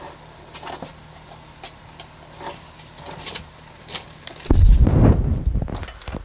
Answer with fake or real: fake